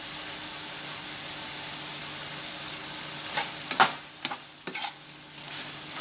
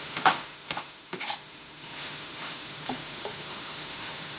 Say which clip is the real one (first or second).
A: first